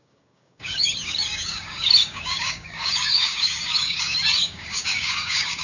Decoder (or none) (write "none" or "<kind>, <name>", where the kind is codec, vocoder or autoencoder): codec, DAC